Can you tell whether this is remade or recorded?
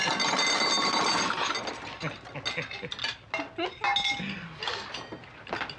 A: recorded